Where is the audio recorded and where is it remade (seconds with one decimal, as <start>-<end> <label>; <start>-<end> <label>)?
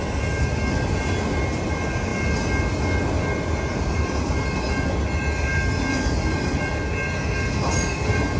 0.0-3.7 recorded; 3.7-4.4 remade; 4.4-5.5 recorded; 5.5-6.7 remade; 6.7-8.4 recorded